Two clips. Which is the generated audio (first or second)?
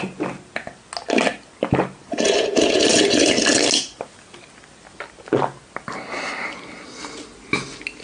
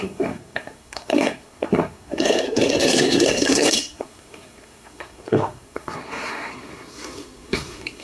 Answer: second